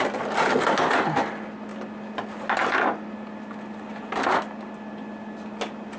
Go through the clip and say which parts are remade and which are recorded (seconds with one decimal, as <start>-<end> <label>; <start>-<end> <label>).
0.0-6.0 recorded